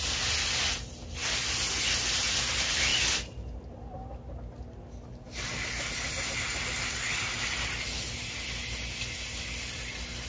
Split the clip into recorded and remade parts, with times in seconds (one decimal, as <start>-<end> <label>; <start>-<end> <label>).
0.0-10.3 recorded